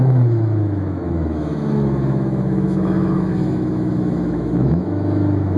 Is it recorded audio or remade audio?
remade